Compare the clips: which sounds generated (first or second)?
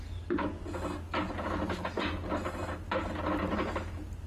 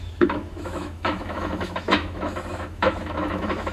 second